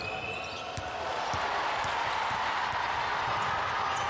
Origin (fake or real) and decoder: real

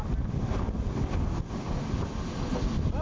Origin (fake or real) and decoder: real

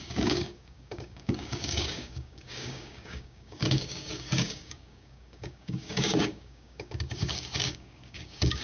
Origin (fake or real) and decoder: fake, codec, DAC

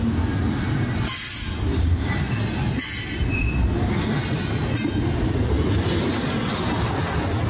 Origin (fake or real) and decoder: real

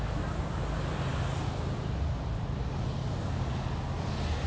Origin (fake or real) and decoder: real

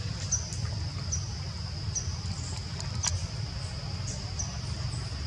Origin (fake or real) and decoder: real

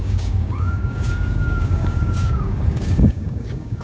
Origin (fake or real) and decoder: fake, codec, DAC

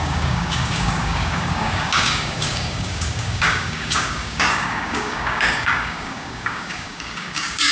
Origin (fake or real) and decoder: fake, codec, DAC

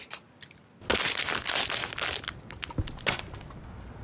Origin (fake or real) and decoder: real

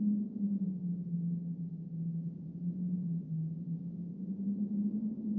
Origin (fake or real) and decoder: real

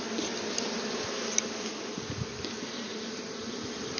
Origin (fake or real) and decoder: real